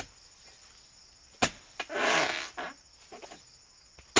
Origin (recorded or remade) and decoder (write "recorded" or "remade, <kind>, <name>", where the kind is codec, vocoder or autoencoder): recorded